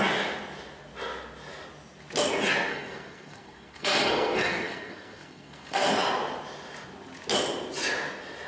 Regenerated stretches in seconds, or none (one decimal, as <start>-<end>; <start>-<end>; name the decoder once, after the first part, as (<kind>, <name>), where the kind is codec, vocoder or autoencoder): 2.7-5.9 (codec, SNAC)